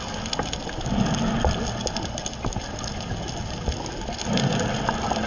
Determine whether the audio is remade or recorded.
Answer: recorded